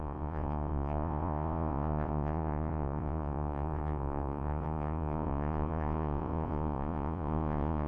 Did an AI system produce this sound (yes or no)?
yes